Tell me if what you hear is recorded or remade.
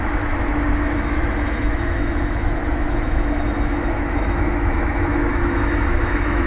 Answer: remade